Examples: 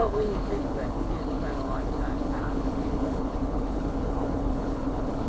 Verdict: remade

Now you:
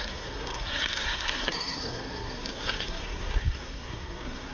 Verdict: remade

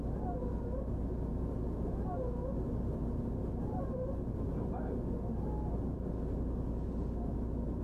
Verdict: recorded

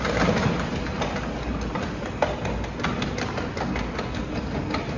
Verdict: recorded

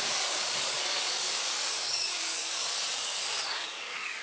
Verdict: remade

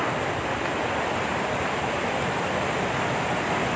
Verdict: recorded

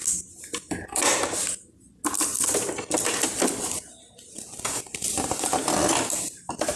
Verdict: recorded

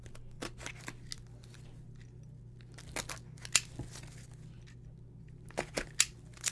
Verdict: recorded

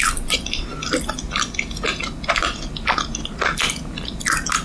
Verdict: recorded